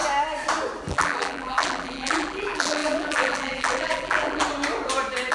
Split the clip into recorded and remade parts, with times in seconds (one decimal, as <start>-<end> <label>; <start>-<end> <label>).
0.0-0.9 recorded; 0.9-4.4 remade; 4.4-5.3 recorded